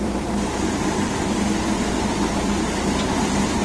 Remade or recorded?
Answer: remade